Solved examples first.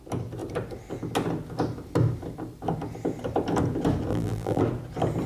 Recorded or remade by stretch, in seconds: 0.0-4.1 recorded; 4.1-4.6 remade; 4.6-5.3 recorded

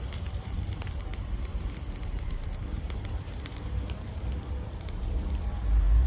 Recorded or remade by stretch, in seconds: 0.0-6.1 remade

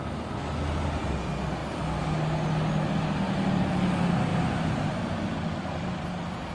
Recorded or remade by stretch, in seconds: 0.0-1.6 recorded; 1.6-2.2 remade; 2.2-4.3 recorded; 4.3-5.3 remade; 5.3-6.5 recorded

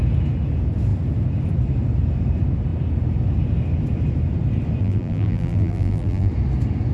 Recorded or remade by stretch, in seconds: 0.0-4.8 recorded; 4.8-6.3 remade; 6.3-6.9 recorded